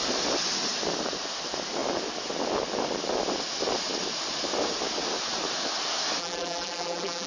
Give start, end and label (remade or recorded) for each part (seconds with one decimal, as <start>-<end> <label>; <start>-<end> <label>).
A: 0.0-6.2 recorded; 6.2-7.3 remade